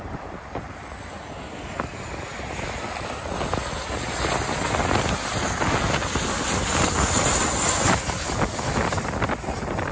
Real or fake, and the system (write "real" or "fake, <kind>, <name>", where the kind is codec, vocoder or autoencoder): real